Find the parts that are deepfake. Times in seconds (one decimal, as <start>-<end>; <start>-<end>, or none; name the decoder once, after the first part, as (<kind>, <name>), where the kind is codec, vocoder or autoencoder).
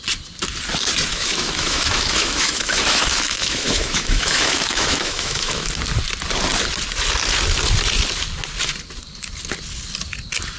1.1-5.7 (autoencoder, DAC-VAE)